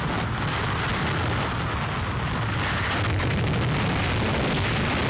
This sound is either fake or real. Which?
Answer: real